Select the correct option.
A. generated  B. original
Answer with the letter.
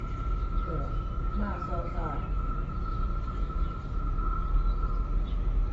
B